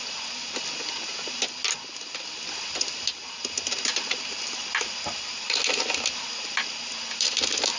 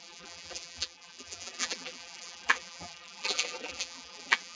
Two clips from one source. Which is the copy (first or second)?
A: second